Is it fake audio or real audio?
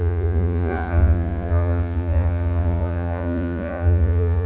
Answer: fake